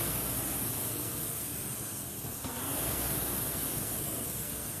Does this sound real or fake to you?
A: fake